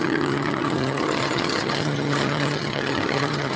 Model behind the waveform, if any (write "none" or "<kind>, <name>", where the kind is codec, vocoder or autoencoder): vocoder, HiFi-GAN